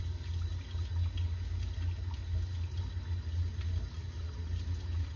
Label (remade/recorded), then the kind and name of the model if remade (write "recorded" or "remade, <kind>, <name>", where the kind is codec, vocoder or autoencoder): recorded